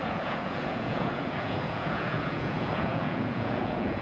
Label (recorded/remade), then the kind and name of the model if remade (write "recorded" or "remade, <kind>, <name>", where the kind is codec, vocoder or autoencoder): remade, vocoder, Vocos